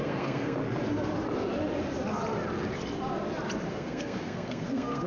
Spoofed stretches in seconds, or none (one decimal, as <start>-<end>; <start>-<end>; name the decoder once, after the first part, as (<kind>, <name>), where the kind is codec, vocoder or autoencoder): 0.0-0.6 (codec, SNAC); 3.7-5.1